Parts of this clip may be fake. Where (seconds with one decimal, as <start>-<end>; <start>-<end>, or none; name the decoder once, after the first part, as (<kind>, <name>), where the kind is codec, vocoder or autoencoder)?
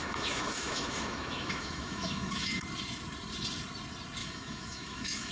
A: 0.0-2.6 (autoencoder, DAC-VAE); 4.2-5.3